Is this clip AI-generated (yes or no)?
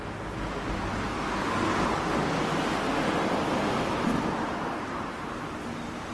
no